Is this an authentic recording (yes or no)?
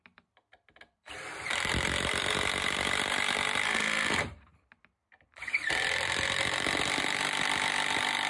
no